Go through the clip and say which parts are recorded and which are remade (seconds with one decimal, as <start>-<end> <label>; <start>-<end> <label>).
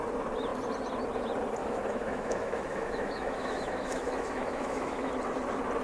0.0-1.6 recorded; 1.6-5.1 remade; 5.1-5.8 recorded